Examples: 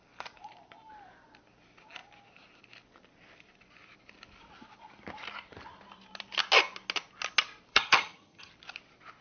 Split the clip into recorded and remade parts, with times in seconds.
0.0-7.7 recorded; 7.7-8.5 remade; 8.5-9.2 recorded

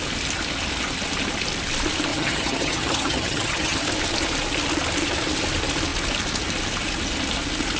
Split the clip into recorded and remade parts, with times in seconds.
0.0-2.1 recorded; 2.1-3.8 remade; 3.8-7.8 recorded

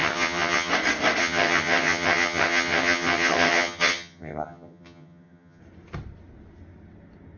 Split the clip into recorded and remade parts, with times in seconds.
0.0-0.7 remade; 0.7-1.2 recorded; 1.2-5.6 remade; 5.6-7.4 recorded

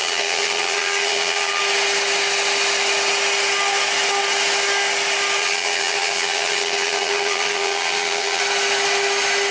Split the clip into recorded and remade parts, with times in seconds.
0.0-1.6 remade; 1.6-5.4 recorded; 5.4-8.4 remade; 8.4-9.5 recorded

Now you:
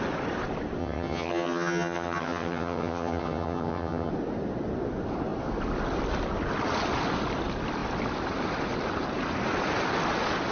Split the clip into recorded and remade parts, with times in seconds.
0.0-0.8 recorded; 0.8-4.1 remade; 4.1-10.5 recorded